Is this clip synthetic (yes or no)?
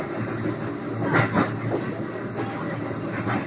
no